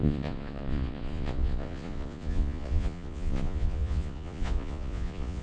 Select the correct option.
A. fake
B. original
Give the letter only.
A